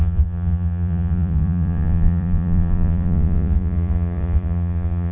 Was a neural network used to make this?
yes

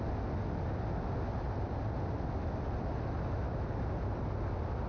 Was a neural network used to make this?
no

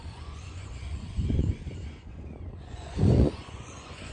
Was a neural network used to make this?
yes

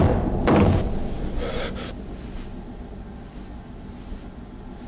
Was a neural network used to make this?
no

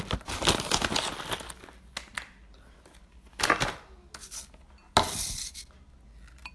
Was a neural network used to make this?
no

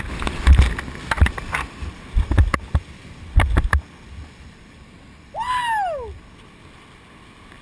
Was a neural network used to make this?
no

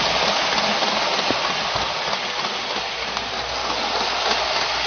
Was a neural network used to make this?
no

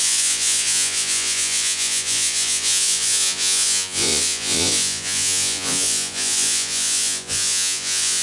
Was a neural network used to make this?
yes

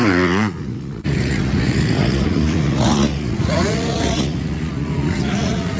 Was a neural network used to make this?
yes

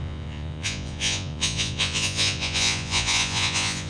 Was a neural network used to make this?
yes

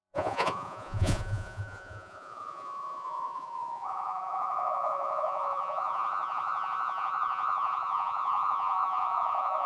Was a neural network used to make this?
yes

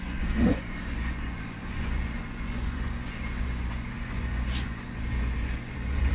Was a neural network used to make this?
yes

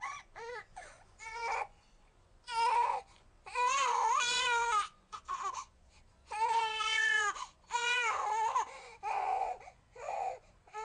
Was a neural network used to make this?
yes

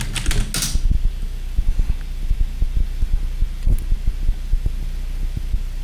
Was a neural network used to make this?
no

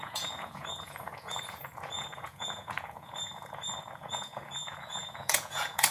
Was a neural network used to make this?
yes